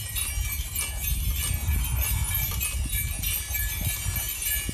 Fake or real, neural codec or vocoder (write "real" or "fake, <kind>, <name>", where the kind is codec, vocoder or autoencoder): real